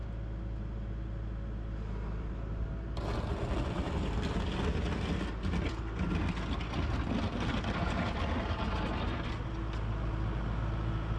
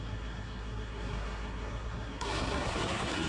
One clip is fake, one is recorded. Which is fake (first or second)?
second